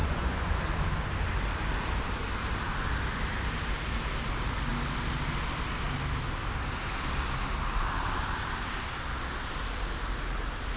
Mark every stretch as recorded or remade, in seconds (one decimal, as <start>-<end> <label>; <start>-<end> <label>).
0.0-0.5 remade; 0.5-10.8 recorded